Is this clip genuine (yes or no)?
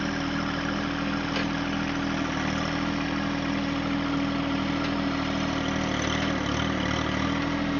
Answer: yes